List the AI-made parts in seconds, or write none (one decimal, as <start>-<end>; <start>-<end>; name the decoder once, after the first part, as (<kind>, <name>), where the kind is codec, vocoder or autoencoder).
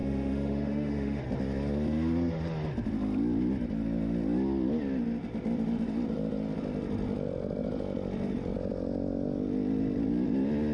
0.0-1.2 (autoencoder, DAC-VAE)